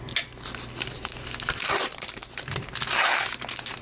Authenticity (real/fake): real